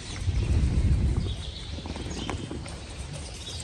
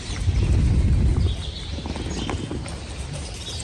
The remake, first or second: first